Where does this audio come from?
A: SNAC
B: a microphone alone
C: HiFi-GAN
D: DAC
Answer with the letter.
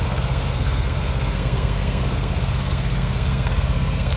A